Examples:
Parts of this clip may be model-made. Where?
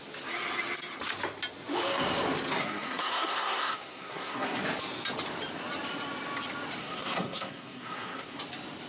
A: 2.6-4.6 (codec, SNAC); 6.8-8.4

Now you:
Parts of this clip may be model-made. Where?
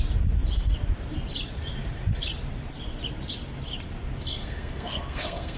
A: 4.3-5.6 (codec, SNAC)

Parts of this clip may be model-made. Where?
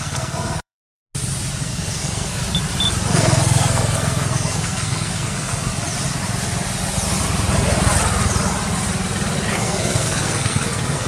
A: 0.0-1.0 (codec, SNAC); 1.6-2.4; 3.1-5.7; 9.5-11.1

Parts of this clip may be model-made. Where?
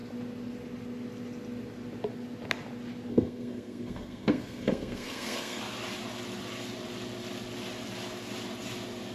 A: 3.1-5.6 (codec, SNAC)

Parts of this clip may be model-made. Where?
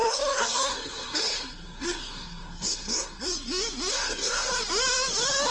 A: 0.0-3.3 (codec, SNAC); 3.9-4.5